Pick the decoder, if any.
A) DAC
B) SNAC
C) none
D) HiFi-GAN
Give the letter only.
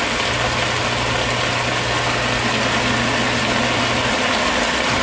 C